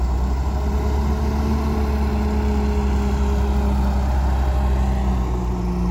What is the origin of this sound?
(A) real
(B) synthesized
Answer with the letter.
A